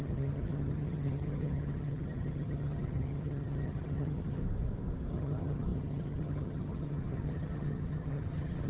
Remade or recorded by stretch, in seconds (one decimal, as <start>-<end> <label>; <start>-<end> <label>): 0.0-4.4 remade; 4.4-5.1 recorded; 5.1-8.7 remade